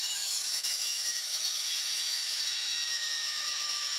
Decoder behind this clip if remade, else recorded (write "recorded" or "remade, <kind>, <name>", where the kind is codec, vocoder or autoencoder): remade, autoencoder, DAC-VAE